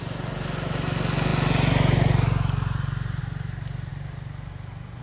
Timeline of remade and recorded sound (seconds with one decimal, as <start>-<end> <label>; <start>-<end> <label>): 0.0-5.0 recorded